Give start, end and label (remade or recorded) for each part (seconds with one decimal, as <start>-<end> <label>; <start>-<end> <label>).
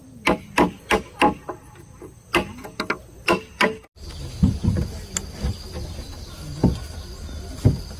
0.0-8.0 recorded